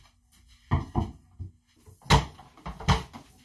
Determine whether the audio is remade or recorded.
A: recorded